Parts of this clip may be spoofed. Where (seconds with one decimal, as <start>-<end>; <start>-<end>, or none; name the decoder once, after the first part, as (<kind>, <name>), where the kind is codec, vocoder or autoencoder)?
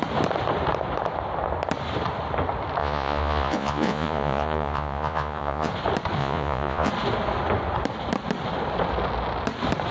2.8-5.7 (vocoder, Vocos); 6.2-6.9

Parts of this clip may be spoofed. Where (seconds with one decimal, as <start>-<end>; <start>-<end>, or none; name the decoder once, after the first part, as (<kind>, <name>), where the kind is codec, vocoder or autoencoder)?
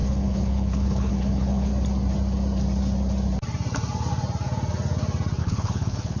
0.0-1.7 (codec, HILCodec); 5.4-6.2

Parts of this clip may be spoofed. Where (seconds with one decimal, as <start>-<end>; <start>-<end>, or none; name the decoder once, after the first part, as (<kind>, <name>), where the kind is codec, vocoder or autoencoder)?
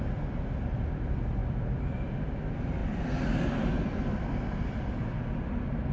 none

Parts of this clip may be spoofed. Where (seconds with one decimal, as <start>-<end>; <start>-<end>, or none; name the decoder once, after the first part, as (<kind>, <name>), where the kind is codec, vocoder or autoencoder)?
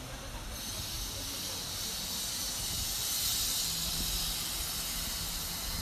none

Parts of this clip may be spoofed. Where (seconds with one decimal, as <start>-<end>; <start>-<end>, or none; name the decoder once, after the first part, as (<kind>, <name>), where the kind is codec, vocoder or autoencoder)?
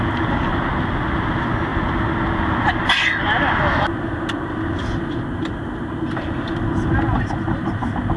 none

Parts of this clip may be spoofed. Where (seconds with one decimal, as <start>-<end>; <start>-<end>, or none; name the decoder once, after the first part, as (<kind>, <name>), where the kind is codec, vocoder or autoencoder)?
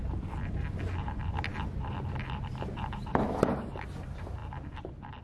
none